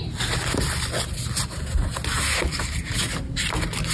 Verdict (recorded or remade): recorded